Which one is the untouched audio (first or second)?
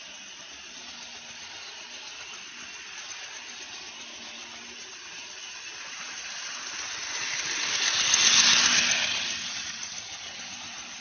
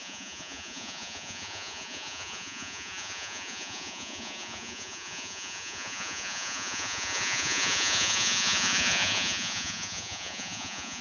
first